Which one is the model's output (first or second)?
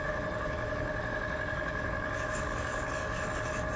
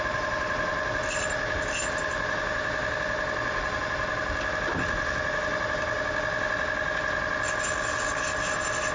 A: first